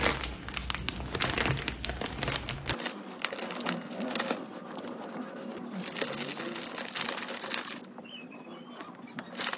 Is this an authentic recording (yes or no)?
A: yes